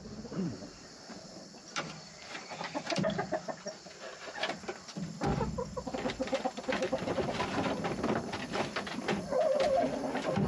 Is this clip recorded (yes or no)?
no